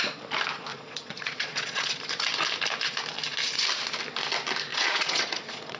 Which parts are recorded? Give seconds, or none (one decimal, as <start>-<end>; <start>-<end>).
0.0-0.7; 2.0-4.7